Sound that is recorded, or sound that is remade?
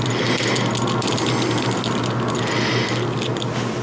recorded